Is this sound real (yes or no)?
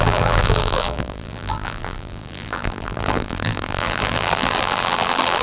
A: no